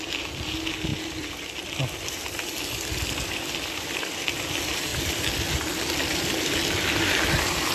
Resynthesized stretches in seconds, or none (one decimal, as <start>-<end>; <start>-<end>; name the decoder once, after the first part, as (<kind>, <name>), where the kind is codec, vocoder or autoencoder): none